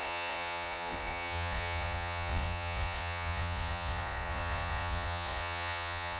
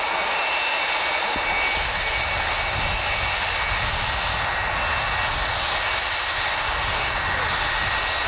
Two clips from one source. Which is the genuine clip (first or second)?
second